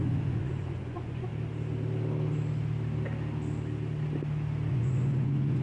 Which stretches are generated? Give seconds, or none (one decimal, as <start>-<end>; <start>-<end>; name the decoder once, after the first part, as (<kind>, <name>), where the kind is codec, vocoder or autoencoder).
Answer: 0.0-1.3 (vocoder, Vocos); 4.7-5.6